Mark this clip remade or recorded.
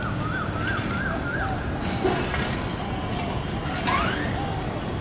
recorded